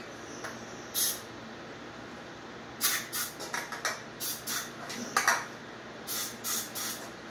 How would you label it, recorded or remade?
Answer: recorded